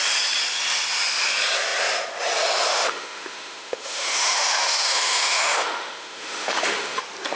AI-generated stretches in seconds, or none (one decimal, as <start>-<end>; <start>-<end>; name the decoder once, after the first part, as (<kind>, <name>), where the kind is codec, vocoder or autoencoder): 2.7-7.0 (autoencoder, DAC-VAE)